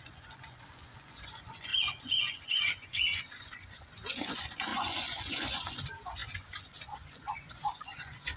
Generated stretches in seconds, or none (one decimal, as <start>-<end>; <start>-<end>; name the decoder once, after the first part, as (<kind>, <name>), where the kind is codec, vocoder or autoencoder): 0.0-8.4 (vocoder, Vocos)